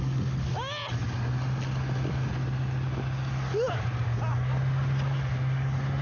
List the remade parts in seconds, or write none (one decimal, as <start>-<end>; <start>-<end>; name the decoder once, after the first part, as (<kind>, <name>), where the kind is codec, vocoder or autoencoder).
none